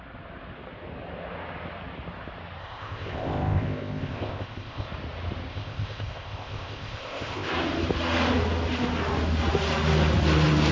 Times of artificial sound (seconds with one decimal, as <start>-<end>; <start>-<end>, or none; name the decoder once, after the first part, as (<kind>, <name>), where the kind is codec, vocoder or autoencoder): 2.6-4.9 (codec, ZipCodec); 5.5-7.5